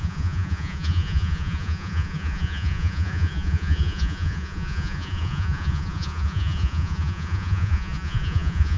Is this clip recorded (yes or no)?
no